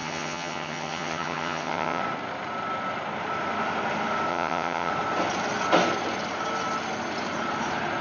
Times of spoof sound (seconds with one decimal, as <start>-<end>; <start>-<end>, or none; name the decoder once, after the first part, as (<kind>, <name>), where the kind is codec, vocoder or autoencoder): 0.0-2.0 (vocoder, HiFi-GAN); 4.3-4.9